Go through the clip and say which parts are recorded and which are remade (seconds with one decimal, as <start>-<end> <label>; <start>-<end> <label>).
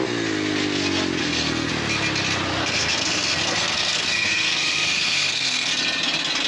0.0-1.2 recorded; 1.2-1.7 remade; 1.7-2.6 recorded; 2.6-5.7 remade; 5.7-6.5 recorded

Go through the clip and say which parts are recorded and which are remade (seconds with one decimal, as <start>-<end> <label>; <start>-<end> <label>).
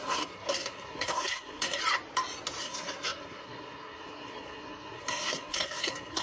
0.0-1.8 remade; 1.8-2.6 recorded; 2.6-6.2 remade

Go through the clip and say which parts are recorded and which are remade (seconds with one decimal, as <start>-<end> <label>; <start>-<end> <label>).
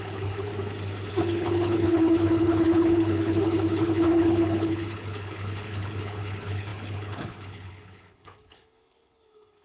0.0-0.5 remade; 0.5-1.1 recorded; 1.1-9.6 remade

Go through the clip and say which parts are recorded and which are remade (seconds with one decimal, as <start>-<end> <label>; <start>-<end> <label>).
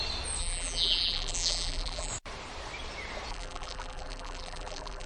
0.0-0.4 recorded; 0.4-2.1 remade; 2.1-3.3 recorded; 3.3-5.1 remade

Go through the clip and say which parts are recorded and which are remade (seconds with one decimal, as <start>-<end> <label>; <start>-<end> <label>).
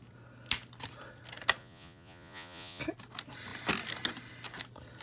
0.0-1.6 recorded; 1.6-2.8 remade; 2.8-5.0 recorded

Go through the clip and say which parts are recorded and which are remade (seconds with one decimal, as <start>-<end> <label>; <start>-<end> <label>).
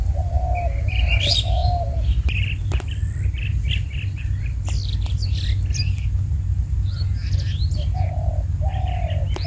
0.0-9.5 recorded